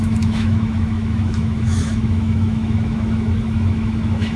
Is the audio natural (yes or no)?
no